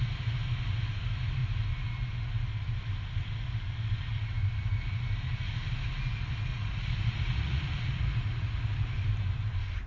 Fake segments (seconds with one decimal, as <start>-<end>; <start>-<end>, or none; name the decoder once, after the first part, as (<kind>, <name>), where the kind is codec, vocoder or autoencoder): 6.5-8.8 (vocoder, Vocos)